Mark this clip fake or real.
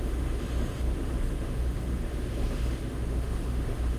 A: fake